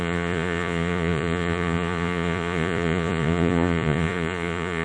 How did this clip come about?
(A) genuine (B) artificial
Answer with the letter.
B